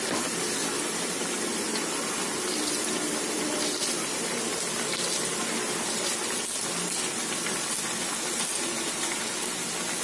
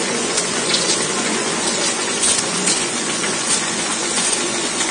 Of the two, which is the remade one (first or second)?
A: second